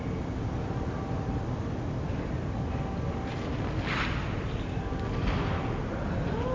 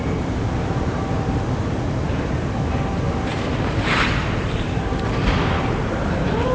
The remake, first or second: second